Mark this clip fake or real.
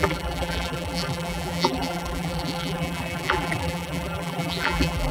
fake